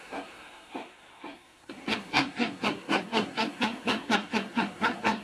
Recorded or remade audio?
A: remade